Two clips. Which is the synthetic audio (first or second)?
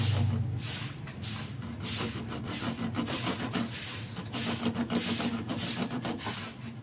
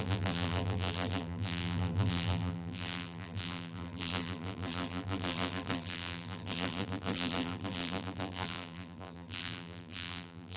second